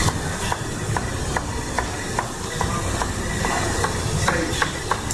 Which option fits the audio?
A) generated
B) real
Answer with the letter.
B